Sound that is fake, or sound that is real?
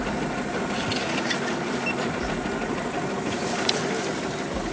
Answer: real